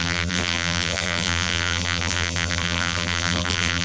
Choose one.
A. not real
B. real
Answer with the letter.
A